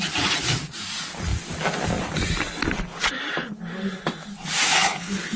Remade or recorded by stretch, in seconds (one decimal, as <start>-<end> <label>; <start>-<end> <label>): 0.0-4.7 recorded; 4.7-5.4 remade